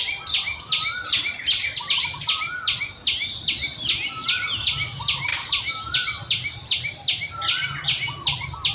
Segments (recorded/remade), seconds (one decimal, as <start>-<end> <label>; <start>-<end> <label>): 0.0-8.7 recorded